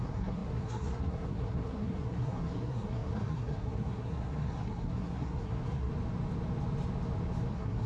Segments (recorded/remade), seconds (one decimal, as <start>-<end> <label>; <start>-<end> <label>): 0.0-5.9 remade; 5.9-7.5 recorded; 7.5-7.9 remade